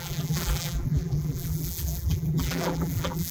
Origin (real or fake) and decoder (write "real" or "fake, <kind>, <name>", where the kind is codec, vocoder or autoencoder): fake, vocoder, BigVGAN v2